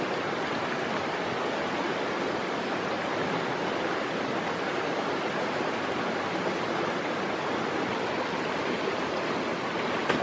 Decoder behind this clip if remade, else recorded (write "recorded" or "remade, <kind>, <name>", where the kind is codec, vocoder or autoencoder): recorded